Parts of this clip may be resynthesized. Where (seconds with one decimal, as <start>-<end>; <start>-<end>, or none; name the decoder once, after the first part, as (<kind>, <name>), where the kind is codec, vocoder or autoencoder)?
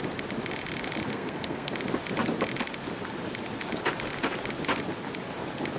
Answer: 1.1-1.7 (codec, SNAC)